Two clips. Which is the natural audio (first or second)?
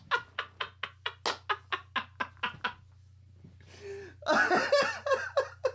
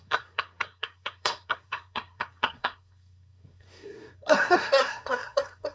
first